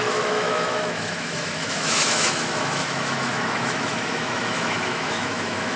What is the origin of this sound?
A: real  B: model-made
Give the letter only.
B